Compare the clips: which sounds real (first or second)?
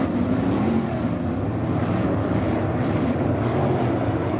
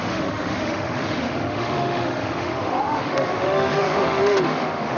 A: first